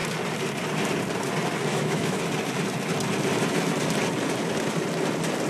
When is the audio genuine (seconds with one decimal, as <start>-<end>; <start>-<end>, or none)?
0.0-1.7; 2.2-5.5